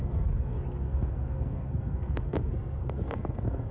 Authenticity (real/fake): fake